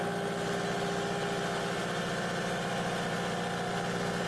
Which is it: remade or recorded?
recorded